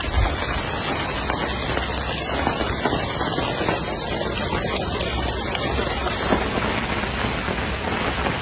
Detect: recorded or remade recorded